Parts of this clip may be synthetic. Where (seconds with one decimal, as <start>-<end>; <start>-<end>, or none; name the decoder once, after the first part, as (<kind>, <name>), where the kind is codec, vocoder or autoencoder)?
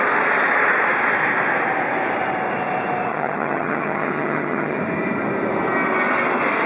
3.1-4.8 (vocoder, HiFi-GAN)